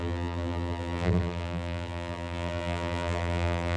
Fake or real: fake